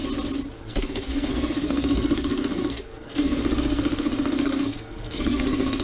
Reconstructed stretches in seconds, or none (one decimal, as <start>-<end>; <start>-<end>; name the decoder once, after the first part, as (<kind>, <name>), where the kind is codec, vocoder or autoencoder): 0.6-5.8 (codec, SNAC)